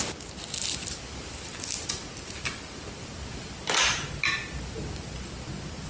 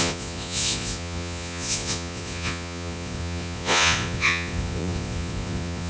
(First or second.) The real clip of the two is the first